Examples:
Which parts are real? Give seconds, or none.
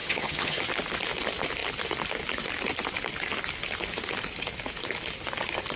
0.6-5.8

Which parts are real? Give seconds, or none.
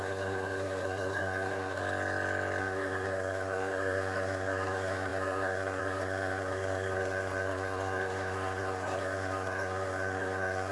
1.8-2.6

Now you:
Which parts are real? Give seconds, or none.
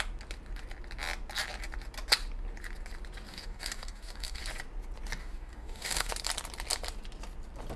0.0-3.3; 4.4-5.2; 6.1-7.8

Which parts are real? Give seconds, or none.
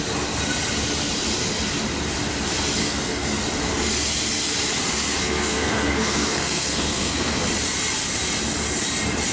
0.0-2.8; 3.4-5.2; 7.4-9.3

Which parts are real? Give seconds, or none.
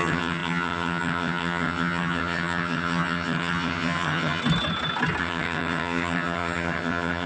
4.4-5.2